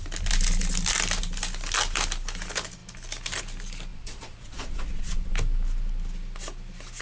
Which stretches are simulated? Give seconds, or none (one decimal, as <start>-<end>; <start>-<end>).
3.9-5.3